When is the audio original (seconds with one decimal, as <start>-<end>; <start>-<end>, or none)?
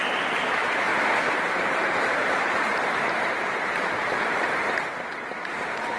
0.0-0.9; 4.5-6.0